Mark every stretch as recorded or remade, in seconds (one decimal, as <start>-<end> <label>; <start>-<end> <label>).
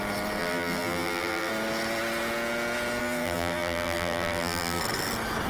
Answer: 0.0-0.4 recorded; 0.4-1.5 remade; 1.5-3.0 recorded; 3.0-4.8 remade; 4.8-5.5 recorded